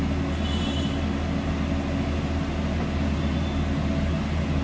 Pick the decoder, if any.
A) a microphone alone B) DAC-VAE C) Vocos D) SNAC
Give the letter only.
A